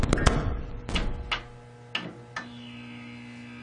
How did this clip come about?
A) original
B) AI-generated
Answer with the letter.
A